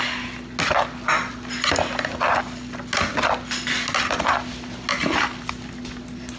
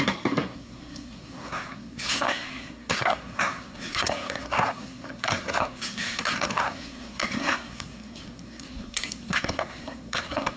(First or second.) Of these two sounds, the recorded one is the first